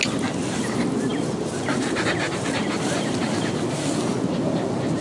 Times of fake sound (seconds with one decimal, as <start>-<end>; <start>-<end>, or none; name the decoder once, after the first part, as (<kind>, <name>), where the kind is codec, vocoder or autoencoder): none